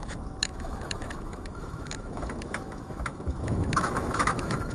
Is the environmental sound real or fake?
fake